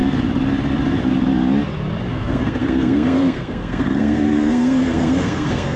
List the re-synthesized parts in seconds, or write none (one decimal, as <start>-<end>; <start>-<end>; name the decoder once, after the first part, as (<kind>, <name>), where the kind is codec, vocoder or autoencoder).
2.1-5.8 (codec, SNAC)